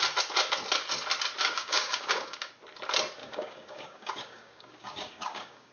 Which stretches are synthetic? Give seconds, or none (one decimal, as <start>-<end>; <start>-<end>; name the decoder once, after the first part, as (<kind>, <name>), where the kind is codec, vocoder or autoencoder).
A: 1.4-2.5 (codec, DAC); 3.2-5.7